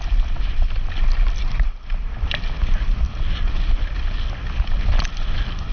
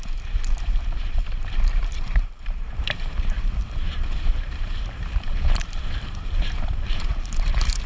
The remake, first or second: second